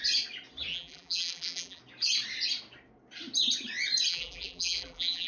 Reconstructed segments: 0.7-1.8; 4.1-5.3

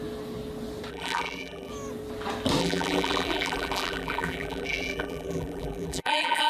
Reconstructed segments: 0.9-1.7; 2.6-6.5

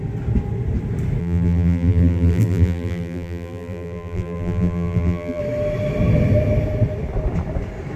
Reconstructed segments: 1.2-5.4

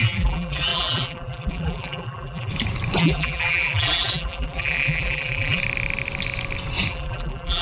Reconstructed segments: 0.0-2.5; 3.0-5.6; 6.9-7.6

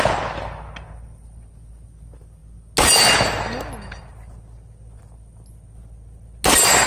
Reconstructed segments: none

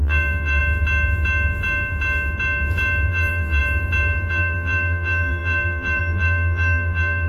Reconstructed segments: 0.0-0.6; 3.1-3.6; 4.3-7.3

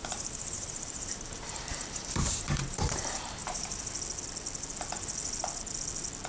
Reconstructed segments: 0.0-3.8